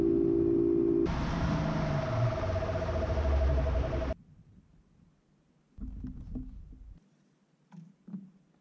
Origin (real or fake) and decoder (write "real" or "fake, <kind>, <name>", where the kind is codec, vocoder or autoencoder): real